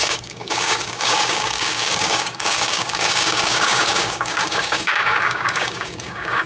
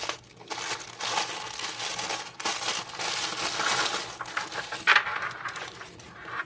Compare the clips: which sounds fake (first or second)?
first